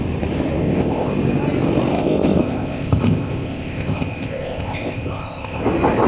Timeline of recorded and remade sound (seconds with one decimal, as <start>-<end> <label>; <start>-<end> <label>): 0.0-0.6 recorded; 0.6-1.1 remade; 1.1-1.9 recorded; 1.9-5.6 remade; 5.6-6.1 recorded